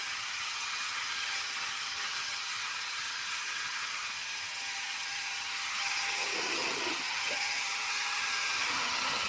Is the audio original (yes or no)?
no